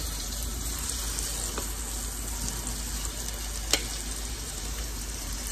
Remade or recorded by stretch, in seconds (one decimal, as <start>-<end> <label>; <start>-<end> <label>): 0.0-1.0 remade; 1.0-4.3 recorded; 4.3-5.5 remade